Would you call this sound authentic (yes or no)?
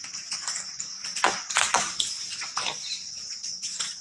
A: yes